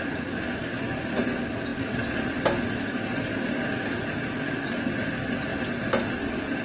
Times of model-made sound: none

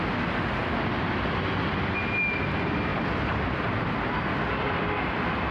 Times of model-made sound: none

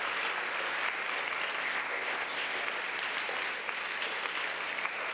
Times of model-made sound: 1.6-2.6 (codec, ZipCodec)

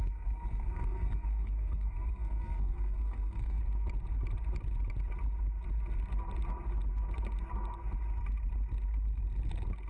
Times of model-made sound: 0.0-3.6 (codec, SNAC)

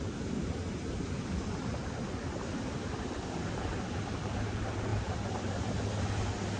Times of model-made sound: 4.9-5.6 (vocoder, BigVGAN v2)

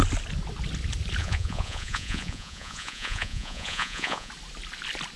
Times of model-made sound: 1.2-4.3 (vocoder, Vocos)

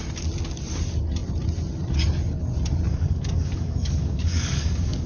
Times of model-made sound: 2.9-5.1 (codec, DAC)